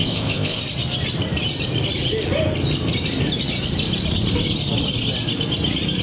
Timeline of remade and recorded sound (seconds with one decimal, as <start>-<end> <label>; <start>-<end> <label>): 0.0-0.6 remade; 0.6-6.0 recorded